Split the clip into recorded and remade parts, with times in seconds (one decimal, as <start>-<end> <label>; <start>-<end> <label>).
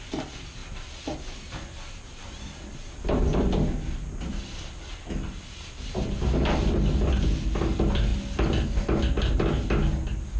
0.0-10.4 recorded